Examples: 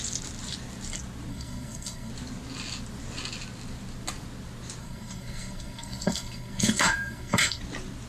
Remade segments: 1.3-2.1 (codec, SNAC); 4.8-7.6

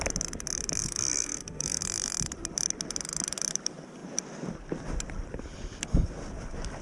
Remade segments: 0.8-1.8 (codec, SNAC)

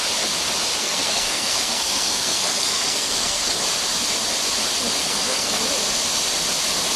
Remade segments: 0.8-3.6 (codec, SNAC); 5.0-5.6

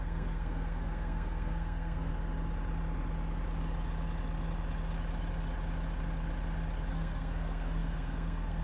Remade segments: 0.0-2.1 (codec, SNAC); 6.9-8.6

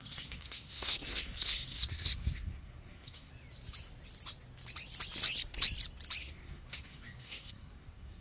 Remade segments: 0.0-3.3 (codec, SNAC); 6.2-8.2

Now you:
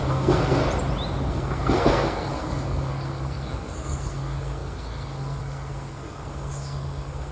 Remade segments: 0.0-0.6 (codec, SNAC); 1.3-7.3

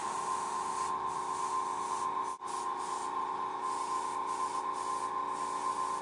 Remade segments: none

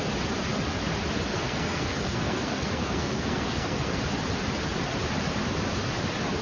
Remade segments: 1.3-4.0 (codec, SNAC)